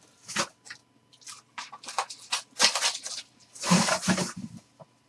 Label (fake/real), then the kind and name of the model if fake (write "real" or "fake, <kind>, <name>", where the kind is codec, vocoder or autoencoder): real